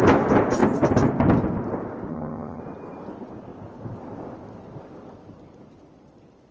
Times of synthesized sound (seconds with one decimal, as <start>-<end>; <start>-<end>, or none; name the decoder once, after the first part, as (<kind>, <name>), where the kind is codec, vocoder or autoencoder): 2.1-2.6 (vocoder, HiFi-GAN)